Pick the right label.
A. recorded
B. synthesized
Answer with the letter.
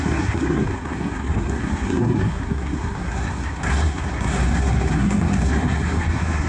B